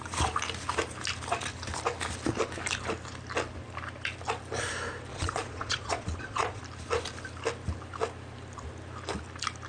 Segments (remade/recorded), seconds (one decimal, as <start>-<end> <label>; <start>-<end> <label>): 0.0-5.1 recorded; 5.1-6.6 remade; 6.6-9.7 recorded